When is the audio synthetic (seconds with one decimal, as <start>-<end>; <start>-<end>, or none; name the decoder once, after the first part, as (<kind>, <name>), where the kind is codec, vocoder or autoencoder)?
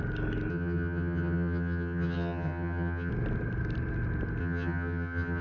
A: 0.5-3.1 (vocoder, HiFi-GAN); 4.4-5.4